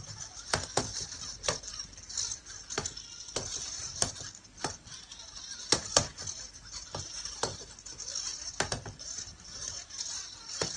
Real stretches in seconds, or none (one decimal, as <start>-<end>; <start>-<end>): 0.0-10.8